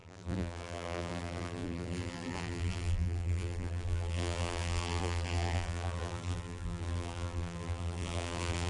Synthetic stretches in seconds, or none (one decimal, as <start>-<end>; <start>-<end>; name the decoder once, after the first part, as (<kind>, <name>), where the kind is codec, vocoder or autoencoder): 0.0-8.7 (vocoder, BigVGAN v2)